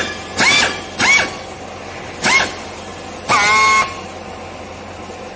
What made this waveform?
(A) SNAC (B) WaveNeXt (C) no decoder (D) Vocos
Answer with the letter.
C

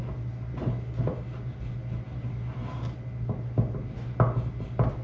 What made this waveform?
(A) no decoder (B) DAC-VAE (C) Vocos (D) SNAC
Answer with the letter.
A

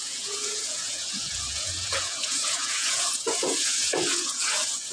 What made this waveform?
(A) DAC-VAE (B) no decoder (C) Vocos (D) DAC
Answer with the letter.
C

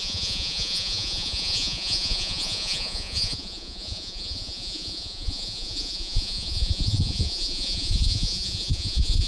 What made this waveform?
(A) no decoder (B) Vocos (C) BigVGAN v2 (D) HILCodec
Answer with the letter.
B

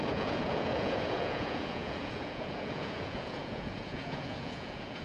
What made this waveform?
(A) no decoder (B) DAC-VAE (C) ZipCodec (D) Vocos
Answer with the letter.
D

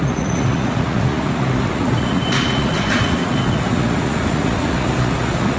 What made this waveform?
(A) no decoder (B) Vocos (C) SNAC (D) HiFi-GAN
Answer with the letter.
B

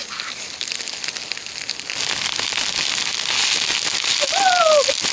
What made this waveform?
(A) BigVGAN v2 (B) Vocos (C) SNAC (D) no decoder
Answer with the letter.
D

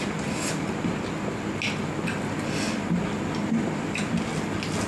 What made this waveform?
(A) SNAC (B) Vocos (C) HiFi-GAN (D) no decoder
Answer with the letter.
D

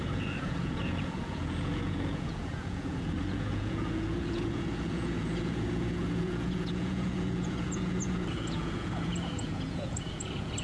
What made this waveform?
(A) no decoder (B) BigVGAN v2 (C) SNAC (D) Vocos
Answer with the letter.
D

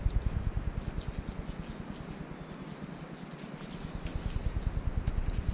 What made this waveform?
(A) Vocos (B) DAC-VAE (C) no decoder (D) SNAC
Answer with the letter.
C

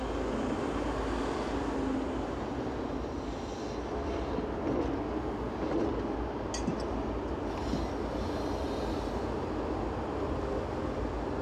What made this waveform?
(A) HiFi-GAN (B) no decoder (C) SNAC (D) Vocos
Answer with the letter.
B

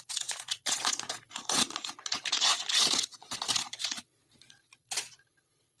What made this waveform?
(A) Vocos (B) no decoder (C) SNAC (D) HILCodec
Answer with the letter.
A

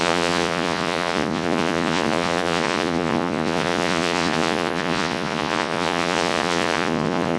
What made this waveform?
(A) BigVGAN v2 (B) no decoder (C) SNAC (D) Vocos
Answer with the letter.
D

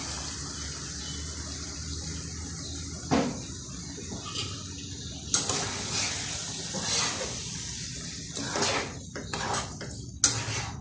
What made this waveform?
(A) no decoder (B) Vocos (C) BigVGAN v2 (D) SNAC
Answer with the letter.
A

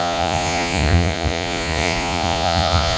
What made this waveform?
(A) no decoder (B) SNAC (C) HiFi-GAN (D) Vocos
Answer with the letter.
D